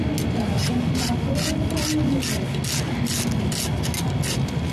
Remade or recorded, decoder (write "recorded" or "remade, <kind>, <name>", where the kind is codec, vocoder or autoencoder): recorded